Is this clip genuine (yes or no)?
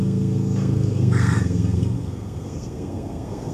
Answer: no